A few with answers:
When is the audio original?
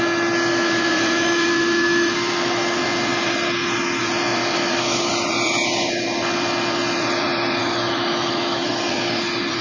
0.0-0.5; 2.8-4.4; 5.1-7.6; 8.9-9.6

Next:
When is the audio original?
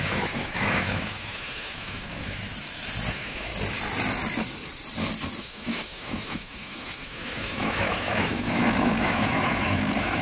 2.4-3.1; 3.5-5.4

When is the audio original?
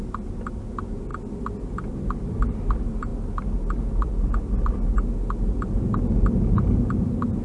0.0-7.4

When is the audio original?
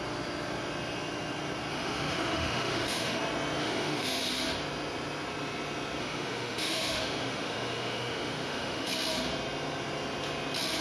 0.0-1.7; 3.2-3.6; 4.2-6.0; 8.9-10.8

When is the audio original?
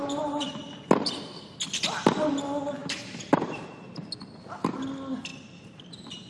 0.6-2.8; 4.1-5.3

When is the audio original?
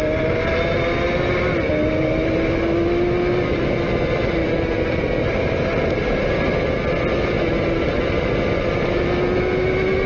0.0-10.1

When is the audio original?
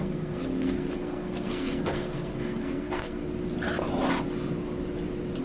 3.2-5.4